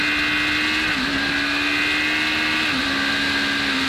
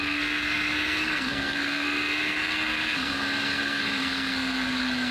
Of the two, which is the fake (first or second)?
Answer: second